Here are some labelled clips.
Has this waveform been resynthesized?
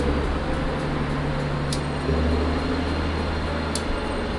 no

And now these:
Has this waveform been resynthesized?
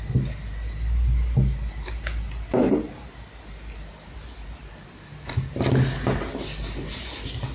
no